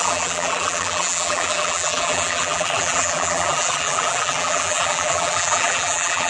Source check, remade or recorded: remade